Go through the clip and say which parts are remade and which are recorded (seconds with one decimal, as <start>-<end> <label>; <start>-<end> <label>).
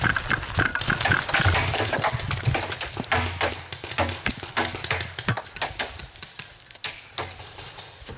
0.0-8.2 recorded